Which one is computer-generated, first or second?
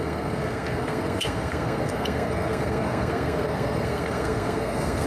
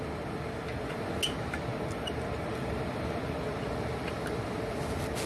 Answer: first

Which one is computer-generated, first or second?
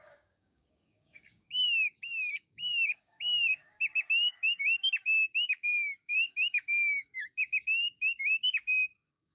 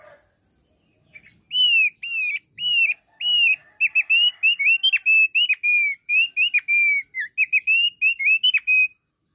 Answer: first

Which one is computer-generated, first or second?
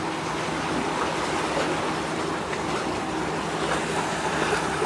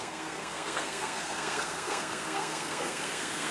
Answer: second